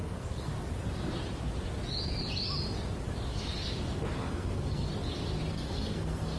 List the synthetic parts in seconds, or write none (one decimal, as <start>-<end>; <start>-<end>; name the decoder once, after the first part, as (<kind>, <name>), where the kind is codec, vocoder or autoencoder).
0.0-0.5 (codec, SNAC); 4.2-4.9; 5.5-6.4